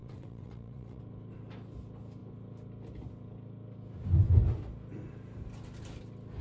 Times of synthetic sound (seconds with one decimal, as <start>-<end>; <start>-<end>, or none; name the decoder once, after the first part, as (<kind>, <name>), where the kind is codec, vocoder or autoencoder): 0.0-1.0 (vocoder, WaveNeXt)